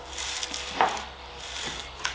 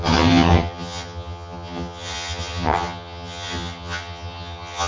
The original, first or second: first